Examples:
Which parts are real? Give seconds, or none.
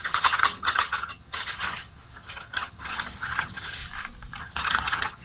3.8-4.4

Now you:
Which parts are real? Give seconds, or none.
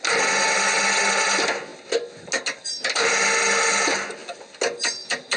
0.0-5.4